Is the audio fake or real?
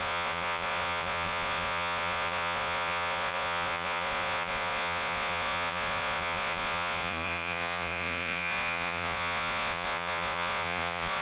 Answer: fake